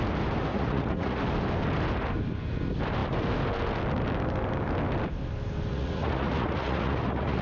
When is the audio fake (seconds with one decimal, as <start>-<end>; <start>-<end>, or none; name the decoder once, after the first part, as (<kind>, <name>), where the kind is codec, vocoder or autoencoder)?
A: 0.5-1.2 (vocoder, Vocos); 5.7-7.4